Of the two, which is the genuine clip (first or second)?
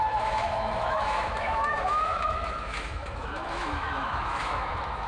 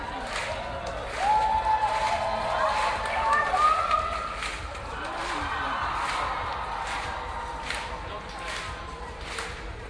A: second